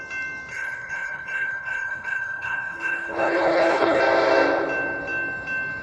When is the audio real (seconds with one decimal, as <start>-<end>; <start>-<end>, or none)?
0.0-0.5; 4.0-5.8